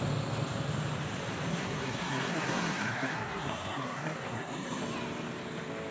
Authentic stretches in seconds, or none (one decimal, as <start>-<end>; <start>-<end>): 0.0-1.5; 4.8-5.9